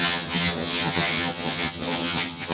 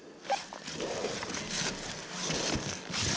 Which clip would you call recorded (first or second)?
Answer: second